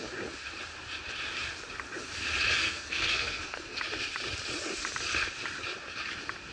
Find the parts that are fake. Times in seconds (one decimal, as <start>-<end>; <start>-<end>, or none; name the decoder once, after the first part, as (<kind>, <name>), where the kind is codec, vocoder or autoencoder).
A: 2.6-3.8 (codec, SNAC)